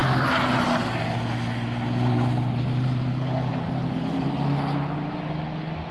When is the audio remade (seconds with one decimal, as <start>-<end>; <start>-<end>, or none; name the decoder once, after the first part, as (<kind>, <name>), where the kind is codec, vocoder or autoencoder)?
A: none